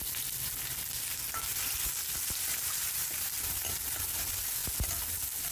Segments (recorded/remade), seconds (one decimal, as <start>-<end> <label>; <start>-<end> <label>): 0.0-5.5 recorded